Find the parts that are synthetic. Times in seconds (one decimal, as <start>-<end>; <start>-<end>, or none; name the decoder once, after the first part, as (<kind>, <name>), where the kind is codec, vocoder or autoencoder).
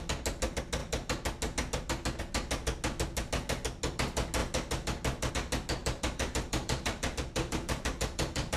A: 5.8-8.6 (vocoder, BigVGAN v2)